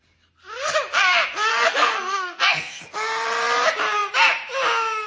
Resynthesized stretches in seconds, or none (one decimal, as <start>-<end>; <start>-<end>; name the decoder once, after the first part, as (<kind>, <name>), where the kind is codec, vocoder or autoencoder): 1.5-2.8 (codec, SNAC)